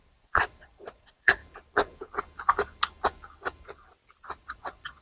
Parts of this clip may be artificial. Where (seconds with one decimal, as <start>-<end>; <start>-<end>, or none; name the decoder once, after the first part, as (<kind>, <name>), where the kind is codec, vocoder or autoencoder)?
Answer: 0.0-1.4 (vocoder, Vocos); 4.2-5.0